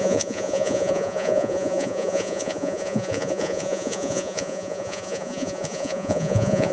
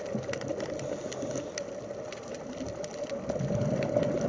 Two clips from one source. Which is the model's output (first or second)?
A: first